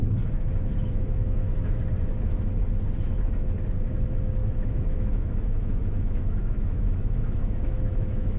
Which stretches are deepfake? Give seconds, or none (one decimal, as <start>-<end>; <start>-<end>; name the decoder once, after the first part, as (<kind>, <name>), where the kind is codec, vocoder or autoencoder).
0.0-1.8 (autoencoder, DAC-VAE); 4.4-8.4